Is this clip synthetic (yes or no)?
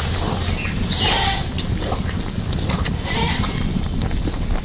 no